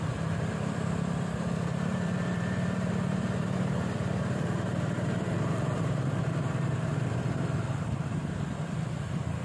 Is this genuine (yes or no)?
no